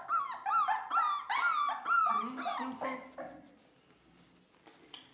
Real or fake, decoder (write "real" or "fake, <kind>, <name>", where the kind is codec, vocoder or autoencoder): real